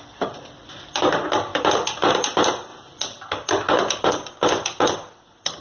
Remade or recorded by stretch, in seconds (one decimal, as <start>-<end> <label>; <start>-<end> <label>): 0.0-5.6 recorded